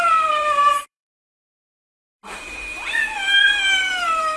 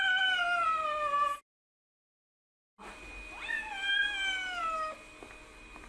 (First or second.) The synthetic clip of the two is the first